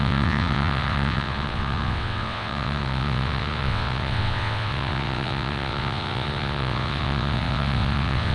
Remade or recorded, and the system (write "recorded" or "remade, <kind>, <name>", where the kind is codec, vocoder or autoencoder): remade, vocoder, WaveNeXt